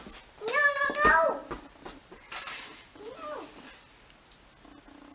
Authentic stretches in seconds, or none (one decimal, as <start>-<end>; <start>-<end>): 0.0-5.1